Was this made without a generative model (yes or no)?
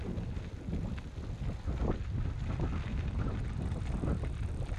yes